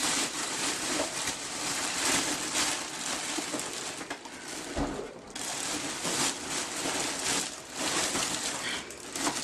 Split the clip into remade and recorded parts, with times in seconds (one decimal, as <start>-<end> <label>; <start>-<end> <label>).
0.0-2.1 remade; 2.1-9.4 recorded